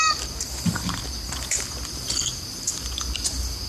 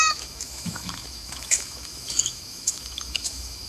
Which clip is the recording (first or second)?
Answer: first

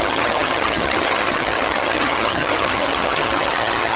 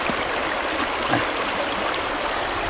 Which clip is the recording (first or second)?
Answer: second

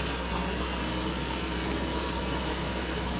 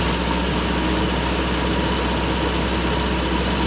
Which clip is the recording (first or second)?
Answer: second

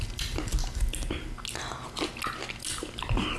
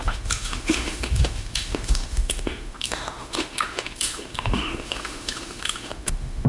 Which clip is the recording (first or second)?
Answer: first